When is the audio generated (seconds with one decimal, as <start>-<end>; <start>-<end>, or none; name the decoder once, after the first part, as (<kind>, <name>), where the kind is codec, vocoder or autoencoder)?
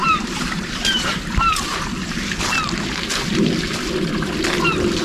0.0-1.7 (vocoder, BigVGAN v2)